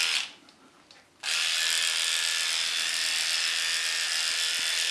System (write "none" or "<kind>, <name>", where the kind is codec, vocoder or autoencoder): none